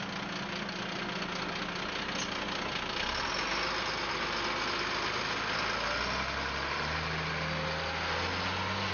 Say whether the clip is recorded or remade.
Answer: recorded